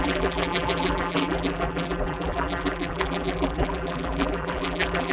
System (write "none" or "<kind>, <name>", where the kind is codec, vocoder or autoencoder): vocoder, BigVGAN v2